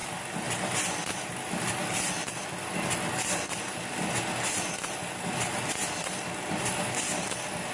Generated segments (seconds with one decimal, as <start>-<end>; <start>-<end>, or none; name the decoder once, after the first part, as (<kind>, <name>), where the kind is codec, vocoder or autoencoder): none